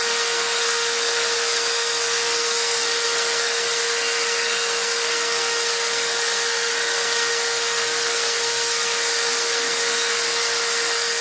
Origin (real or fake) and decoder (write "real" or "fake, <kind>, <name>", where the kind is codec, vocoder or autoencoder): fake, codec, SNAC